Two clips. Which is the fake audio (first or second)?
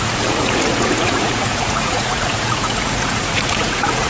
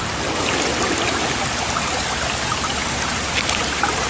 first